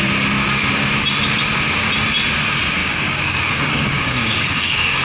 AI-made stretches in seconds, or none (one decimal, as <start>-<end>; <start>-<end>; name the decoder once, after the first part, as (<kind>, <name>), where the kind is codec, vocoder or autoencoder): 2.8-5.0 (codec, DAC)